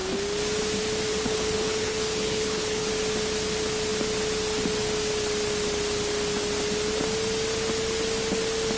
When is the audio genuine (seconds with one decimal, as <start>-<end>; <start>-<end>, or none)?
0.0-1.1; 2.9-8.8